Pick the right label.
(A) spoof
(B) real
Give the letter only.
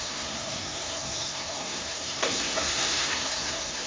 A